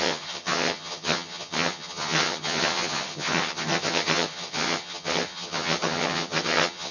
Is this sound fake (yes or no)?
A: yes